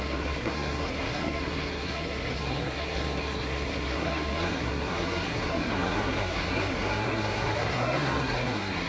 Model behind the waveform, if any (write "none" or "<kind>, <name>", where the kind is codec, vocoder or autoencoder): codec, SNAC